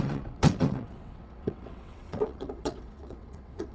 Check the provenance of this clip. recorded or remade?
remade